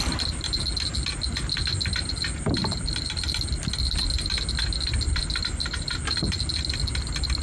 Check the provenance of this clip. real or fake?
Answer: real